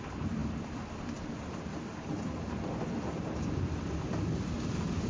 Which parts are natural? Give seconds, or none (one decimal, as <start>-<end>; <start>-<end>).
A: 0.0-5.1